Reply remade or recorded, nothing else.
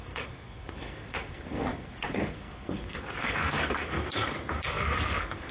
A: remade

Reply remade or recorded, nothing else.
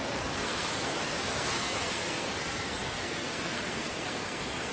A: remade